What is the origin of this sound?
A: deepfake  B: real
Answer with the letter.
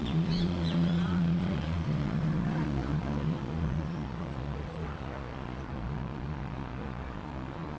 A